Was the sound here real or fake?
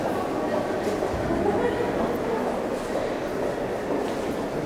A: real